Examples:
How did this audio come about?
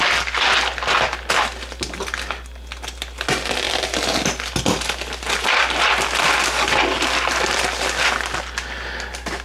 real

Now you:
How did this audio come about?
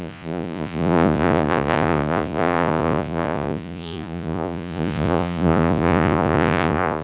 fake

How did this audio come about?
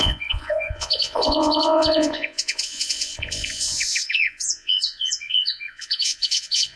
fake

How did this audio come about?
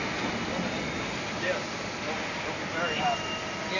real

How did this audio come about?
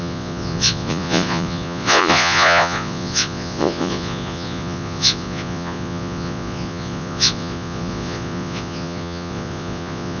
fake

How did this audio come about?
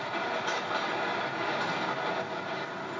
real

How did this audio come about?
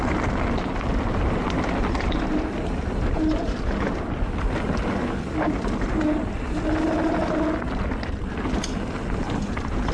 real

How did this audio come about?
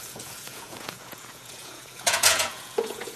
fake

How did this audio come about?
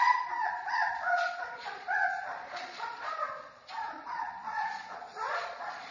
fake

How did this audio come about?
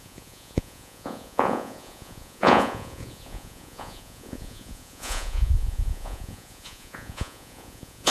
fake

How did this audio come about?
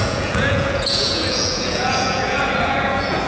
fake